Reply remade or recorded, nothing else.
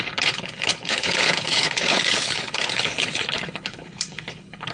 remade